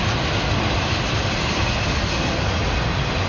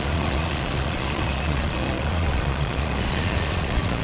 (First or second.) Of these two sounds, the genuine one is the first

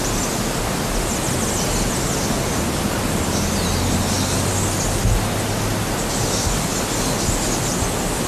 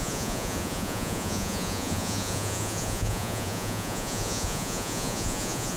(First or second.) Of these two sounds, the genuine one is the first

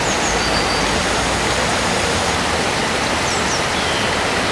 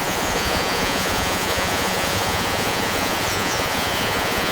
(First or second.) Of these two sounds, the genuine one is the first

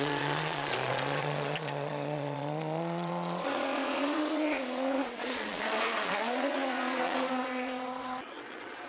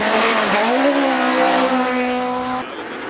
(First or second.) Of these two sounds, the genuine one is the second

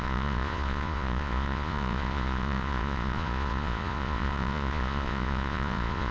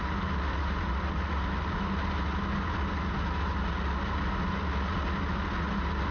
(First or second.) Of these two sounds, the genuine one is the second